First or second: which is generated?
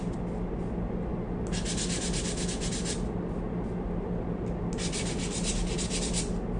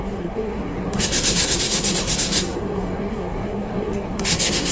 second